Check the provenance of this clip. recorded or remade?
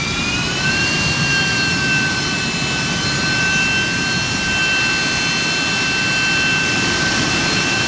recorded